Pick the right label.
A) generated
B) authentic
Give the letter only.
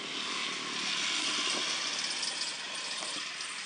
B